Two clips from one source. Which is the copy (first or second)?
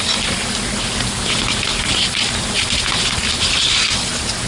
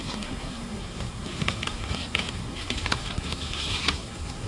second